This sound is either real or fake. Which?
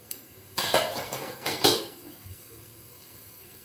fake